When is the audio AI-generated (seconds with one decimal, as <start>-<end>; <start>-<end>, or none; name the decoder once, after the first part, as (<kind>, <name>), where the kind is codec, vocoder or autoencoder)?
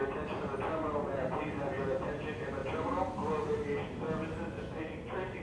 none